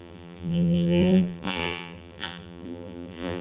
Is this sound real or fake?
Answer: fake